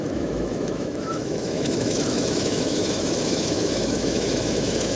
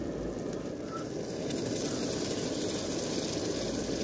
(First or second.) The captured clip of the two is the second